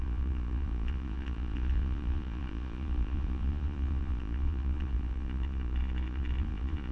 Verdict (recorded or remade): remade